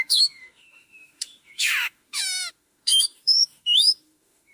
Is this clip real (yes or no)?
no